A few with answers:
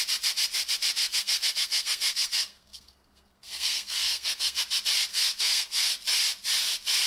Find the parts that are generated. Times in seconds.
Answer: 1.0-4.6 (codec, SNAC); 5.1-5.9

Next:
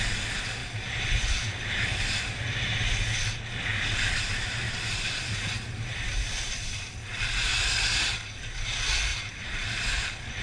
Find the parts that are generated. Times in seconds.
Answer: 0.6-2.2 (vocoder, BigVGAN v2); 3.7-7.6; 9.1-10.4

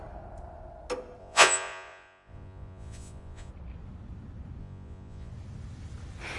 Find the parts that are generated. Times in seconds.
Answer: 1.2-3.5 (vocoder, Vocos); 4.6-5.3

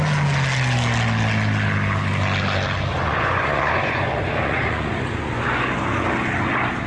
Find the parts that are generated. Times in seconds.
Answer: 2.9-5.9 (vocoder, Vocos)

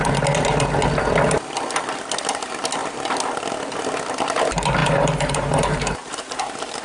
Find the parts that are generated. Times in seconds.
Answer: 4.8-6.8 (vocoder, BigVGAN v2)